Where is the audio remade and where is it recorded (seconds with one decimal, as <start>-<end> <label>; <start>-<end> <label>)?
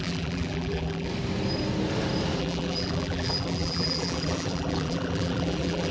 0.0-1.1 remade; 1.1-2.4 recorded; 2.4-5.9 remade